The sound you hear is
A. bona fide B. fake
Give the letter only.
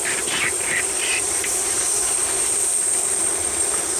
B